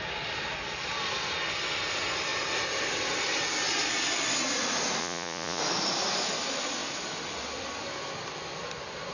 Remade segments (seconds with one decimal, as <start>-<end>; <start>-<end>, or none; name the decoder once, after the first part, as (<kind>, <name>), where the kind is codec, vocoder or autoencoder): 5.0-5.6 (vocoder, Vocos)